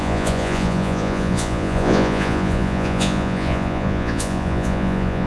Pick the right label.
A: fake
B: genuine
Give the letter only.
A